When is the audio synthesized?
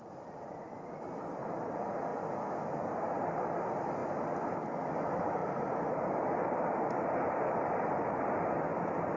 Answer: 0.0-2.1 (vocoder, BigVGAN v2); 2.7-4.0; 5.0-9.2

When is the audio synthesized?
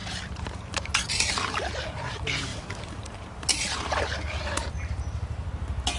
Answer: 0.0-1.3 (vocoder, BigVGAN v2); 2.5-4.0; 4.6-5.5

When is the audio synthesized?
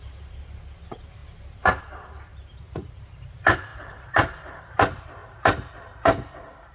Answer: 0.0-6.7 (vocoder, BigVGAN v2)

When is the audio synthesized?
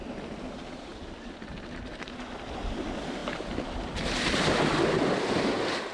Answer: none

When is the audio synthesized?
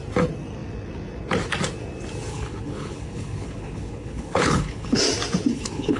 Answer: 2.3-5.0 (codec, HILCodec); 5.5-6.0